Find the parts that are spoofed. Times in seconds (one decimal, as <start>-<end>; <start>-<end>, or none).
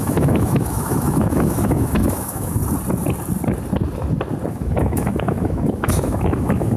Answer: 0.0-2.6; 4.5-6.8